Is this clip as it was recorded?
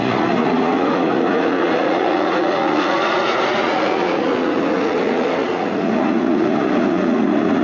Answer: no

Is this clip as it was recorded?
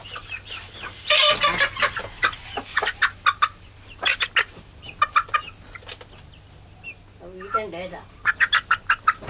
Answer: yes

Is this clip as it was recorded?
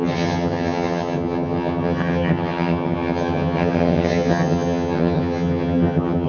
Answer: no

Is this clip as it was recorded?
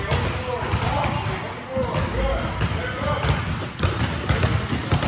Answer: yes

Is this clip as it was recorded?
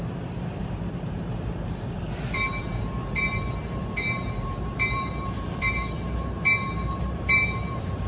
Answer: no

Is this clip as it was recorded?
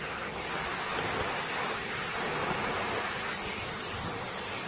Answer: yes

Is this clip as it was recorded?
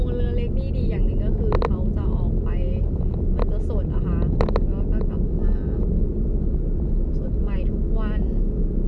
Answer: yes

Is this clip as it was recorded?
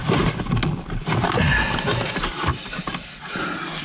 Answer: yes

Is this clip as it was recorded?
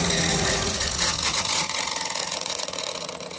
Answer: no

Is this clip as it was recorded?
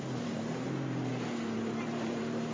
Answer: no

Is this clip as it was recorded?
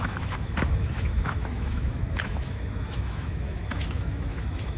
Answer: no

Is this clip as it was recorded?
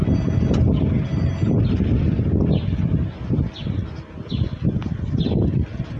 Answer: yes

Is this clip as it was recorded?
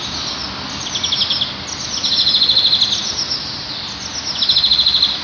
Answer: yes